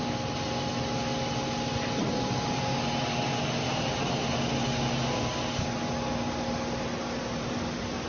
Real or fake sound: real